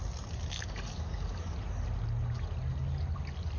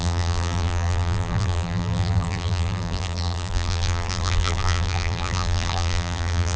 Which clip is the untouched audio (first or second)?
first